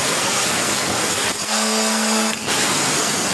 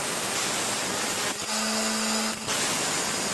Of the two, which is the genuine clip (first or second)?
second